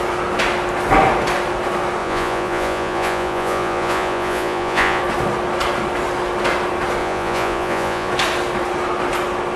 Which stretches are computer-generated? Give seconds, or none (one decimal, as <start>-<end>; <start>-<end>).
2.0-5.0; 7.0-8.1